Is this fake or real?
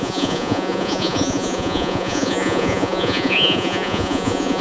fake